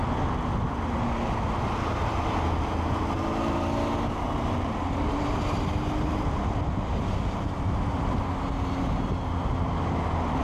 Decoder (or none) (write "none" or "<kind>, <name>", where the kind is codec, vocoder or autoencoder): none